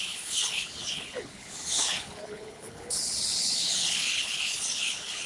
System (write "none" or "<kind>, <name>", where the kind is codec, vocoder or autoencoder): codec, HILCodec